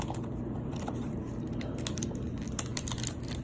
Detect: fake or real real